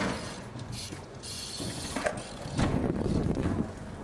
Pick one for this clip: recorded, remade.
remade